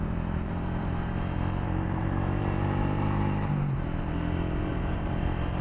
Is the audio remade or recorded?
remade